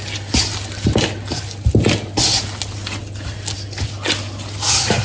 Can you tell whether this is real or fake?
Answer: real